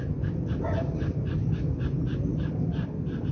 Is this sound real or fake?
real